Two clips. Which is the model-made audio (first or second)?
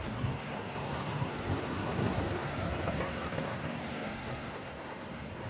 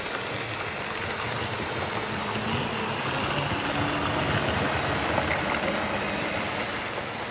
first